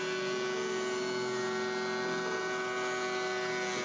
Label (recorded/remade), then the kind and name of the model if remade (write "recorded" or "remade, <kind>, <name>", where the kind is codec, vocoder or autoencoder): recorded